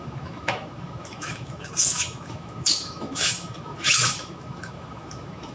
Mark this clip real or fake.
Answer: fake